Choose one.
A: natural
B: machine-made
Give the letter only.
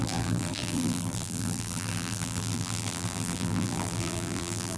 B